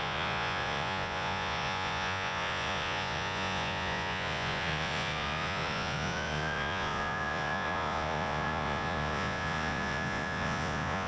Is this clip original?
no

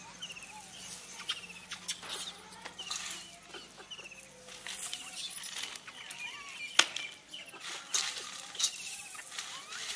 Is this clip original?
yes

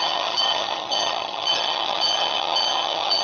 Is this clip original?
no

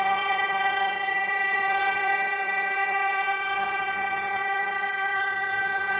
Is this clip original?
no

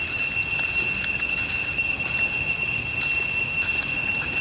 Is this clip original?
yes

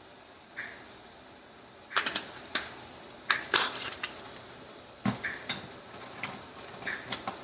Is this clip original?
yes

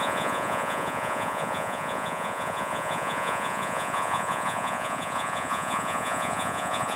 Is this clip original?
no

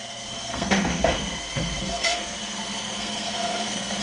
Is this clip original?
no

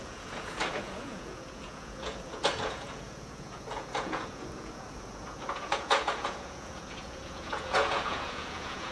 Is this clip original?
no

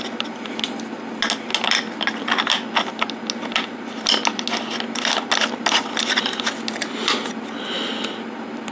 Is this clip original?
yes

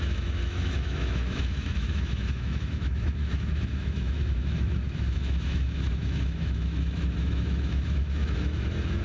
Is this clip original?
no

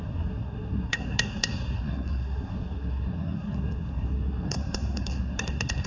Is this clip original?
no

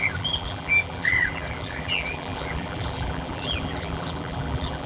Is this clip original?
no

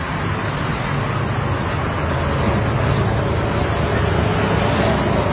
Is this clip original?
yes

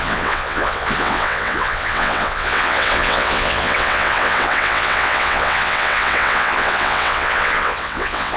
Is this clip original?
no